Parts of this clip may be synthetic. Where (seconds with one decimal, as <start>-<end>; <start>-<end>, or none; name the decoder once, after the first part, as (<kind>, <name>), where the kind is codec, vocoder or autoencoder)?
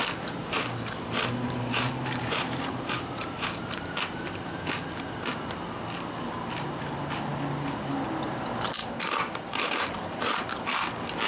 0.4-4.7 (vocoder, BigVGAN v2); 8.8-9.9